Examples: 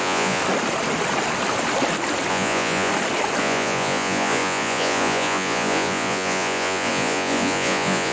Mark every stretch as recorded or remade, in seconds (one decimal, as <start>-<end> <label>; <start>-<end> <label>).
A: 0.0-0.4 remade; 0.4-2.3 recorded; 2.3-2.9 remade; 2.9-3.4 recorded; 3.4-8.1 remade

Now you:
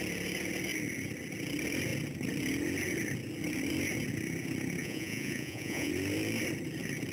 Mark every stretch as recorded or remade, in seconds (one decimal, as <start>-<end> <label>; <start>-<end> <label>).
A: 0.0-4.8 recorded; 4.8-5.9 remade; 5.9-7.1 recorded

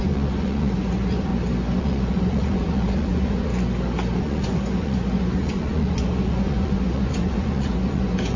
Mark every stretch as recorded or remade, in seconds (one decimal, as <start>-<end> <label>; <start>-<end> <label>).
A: 0.0-1.3 remade; 1.3-1.8 recorded; 1.8-3.5 remade; 3.5-4.2 recorded; 4.2-8.4 remade

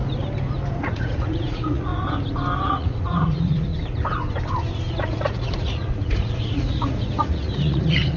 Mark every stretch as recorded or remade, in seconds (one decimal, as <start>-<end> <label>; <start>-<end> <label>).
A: 0.0-0.8 recorded; 0.8-1.9 remade; 1.9-2.7 recorded; 2.7-3.7 remade; 3.7-4.9 recorded; 4.9-8.2 remade

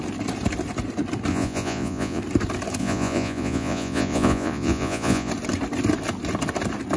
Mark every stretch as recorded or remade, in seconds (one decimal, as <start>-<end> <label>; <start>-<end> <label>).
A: 0.0-1.3 recorded; 1.3-2.2 remade; 2.2-2.8 recorded; 2.8-5.3 remade; 5.3-7.0 recorded